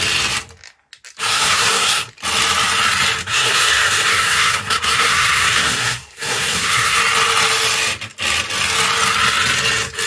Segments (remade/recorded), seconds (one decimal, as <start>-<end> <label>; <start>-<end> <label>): 0.0-1.2 recorded; 1.2-2.1 remade; 2.1-3.2 recorded; 3.2-7.0 remade; 7.0-10.1 recorded